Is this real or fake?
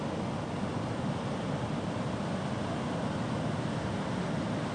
real